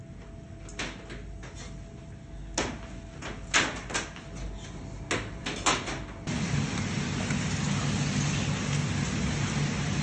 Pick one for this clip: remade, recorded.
recorded